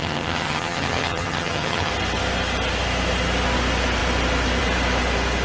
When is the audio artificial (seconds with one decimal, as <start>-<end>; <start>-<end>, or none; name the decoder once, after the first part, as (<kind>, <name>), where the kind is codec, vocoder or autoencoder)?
0.0-1.9 (vocoder, HiFi-GAN)